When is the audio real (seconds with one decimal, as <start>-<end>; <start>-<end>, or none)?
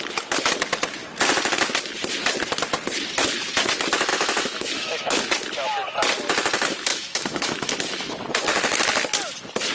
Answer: 0.0-4.1; 5.2-6.9; 7.7-9.7